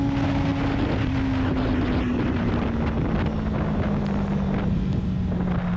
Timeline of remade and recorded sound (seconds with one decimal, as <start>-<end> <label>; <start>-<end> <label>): 0.0-5.8 recorded